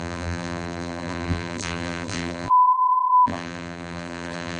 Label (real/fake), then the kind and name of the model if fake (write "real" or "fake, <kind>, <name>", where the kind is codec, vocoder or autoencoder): fake, vocoder, BigVGAN v2